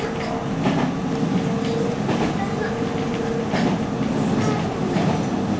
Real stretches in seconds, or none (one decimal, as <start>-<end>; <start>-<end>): 0.0-3.1; 4.0-5.6